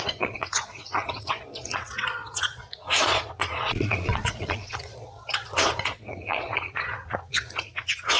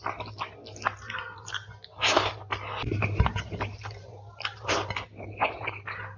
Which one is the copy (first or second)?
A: first